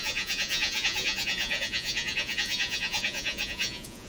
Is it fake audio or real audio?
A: fake